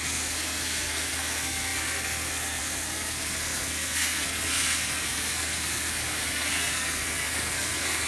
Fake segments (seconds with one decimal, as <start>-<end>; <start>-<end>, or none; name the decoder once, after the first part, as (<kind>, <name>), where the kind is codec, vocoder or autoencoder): 0.0-8.1 (codec, SNAC)